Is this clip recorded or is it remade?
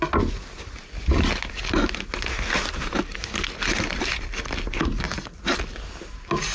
recorded